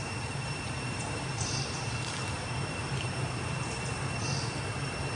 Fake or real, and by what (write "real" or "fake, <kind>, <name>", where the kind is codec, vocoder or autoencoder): fake, vocoder, BigVGAN v2